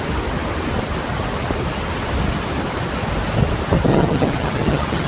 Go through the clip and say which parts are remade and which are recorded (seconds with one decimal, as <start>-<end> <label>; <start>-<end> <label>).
0.0-3.9 recorded; 3.9-5.1 remade